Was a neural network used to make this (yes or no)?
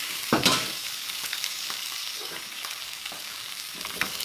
yes